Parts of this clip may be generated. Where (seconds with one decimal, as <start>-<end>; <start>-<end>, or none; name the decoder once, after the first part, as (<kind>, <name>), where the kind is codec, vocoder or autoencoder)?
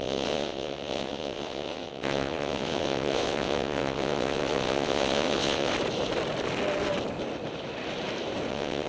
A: 0.0-5.7 (vocoder, WaveNeXt); 8.5-8.9